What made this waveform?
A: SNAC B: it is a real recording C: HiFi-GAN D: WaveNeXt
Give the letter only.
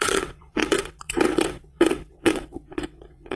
D